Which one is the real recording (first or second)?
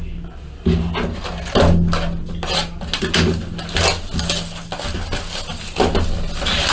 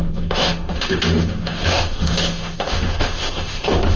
first